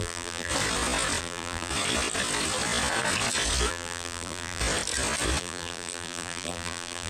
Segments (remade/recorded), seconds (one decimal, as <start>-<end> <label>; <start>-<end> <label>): 0.0-0.5 remade; 0.5-1.2 recorded; 1.2-1.7 remade; 1.7-3.7 recorded; 3.7-4.6 remade; 4.6-5.4 recorded; 5.4-7.1 remade

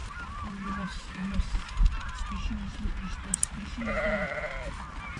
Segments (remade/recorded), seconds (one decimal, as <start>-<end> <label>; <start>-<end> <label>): 0.0-1.9 remade; 1.9-2.7 recorded; 2.7-4.5 remade; 4.5-5.2 recorded

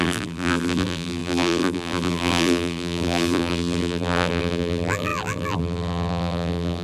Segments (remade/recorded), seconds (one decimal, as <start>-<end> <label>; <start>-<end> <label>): 0.0-6.8 remade

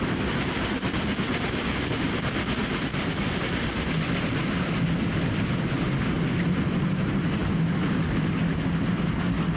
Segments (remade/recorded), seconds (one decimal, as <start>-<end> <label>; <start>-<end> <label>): 0.0-2.6 recorded; 2.6-3.9 remade; 3.9-9.6 recorded

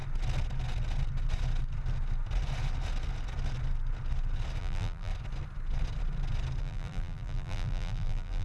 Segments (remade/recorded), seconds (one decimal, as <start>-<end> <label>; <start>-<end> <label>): 0.0-4.6 recorded; 4.6-5.1 remade; 5.1-6.6 recorded; 6.6-8.4 remade